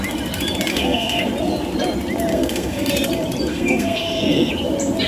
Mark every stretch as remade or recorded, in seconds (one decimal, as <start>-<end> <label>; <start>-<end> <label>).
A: 0.0-0.7 recorded; 0.7-1.3 remade; 1.3-2.3 recorded; 2.3-2.9 remade; 2.9-3.5 recorded; 3.5-4.5 remade; 4.5-5.1 recorded